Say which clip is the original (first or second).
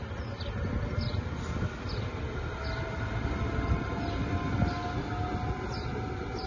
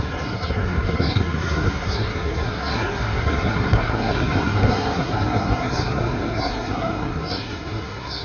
first